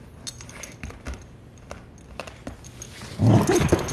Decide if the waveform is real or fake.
real